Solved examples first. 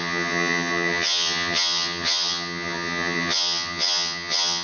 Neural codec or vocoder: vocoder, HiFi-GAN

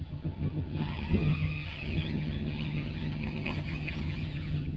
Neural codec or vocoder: vocoder, HiFi-GAN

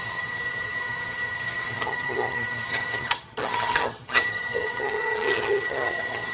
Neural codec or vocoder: vocoder, HiFi-GAN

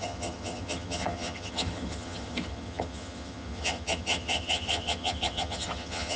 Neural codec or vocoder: vocoder, HiFi-GAN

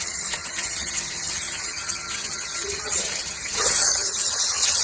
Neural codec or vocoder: vocoder, HiFi-GAN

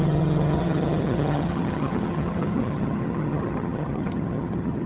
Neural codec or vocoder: vocoder, HiFi-GAN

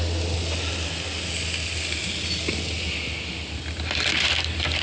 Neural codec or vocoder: none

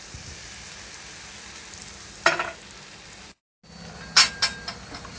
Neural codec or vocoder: none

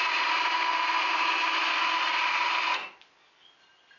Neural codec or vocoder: none